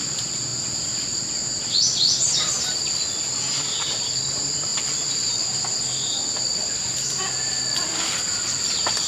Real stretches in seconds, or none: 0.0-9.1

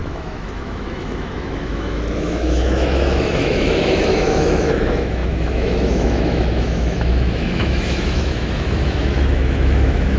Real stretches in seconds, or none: none

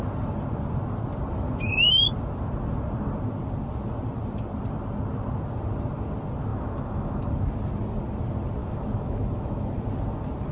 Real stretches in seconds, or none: 0.0-6.5; 7.5-8.6; 9.7-10.5

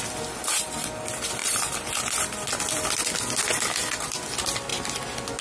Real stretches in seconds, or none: 4.7-5.4

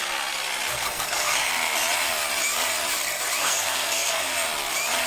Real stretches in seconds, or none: 0.0-0.7; 1.5-3.4; 4.3-5.1